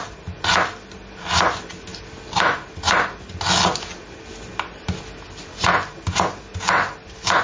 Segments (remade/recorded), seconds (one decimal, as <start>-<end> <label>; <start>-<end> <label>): 0.0-7.4 recorded